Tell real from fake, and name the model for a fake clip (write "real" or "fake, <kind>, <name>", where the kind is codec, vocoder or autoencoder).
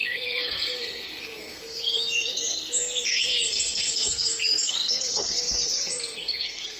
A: fake, codec, SNAC